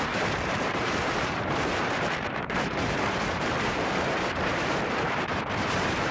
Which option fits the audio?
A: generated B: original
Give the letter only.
A